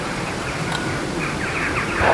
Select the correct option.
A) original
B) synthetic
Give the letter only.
A